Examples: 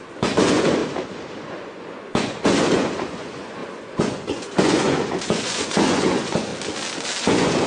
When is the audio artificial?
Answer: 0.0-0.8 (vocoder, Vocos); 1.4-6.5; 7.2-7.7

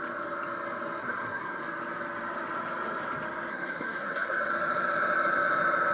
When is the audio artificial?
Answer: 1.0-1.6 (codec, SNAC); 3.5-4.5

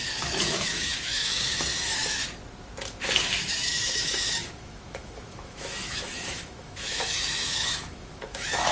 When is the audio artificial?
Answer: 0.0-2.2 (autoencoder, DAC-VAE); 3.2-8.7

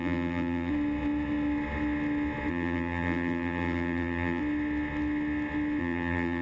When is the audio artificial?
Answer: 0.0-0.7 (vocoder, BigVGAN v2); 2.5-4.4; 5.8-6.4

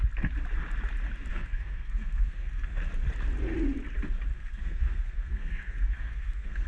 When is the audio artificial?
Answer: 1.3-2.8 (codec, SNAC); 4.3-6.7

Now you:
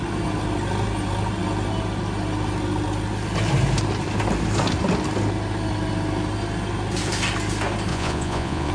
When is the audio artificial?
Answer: 7.9-8.7 (vocoder, Vocos)